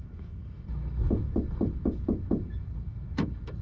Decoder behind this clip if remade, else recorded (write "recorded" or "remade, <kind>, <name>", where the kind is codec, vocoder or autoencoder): remade, autoencoder, DAC-VAE